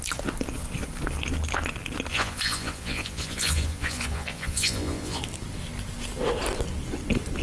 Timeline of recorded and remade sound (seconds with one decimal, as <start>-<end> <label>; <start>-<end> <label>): 0.0-2.1 recorded; 2.1-5.2 remade; 5.2-7.4 recorded